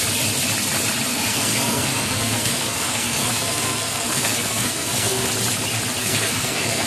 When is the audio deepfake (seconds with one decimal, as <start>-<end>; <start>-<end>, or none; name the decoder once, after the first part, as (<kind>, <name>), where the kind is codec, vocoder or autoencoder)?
1.1-5.2 (codec, SNAC); 6.0-6.9